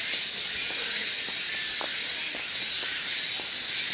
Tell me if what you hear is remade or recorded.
recorded